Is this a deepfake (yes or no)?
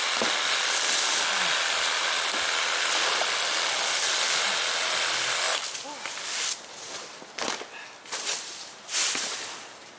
no